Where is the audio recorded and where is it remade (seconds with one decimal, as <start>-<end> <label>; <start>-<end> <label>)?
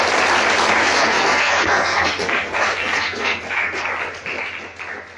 0.0-0.8 recorded; 0.8-3.9 remade; 3.9-5.2 recorded